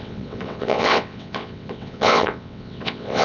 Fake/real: fake